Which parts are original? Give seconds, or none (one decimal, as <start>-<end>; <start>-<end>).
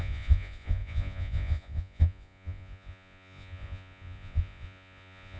none